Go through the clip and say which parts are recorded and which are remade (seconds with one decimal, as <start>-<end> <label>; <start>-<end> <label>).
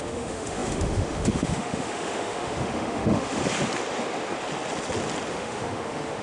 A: 0.0-3.4 remade; 3.4-5.3 recorded; 5.3-6.2 remade